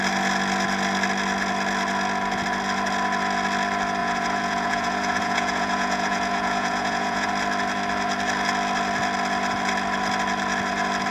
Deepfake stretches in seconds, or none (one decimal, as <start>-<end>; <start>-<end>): 4.0-7.3